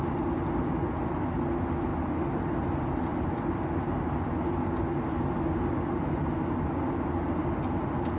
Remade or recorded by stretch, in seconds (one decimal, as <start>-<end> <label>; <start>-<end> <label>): 0.0-8.2 recorded